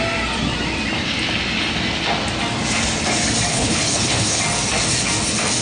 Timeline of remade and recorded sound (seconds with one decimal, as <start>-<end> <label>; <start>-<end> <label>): 0.0-3.5 recorded; 3.5-4.4 remade; 4.4-5.6 recorded